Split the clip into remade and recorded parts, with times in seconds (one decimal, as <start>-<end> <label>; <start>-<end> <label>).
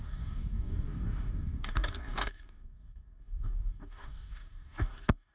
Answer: 0.0-5.3 remade